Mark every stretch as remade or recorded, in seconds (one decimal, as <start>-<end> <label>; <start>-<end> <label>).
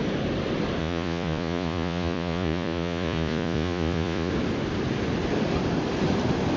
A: 0.0-0.8 recorded; 0.8-4.3 remade; 4.3-6.6 recorded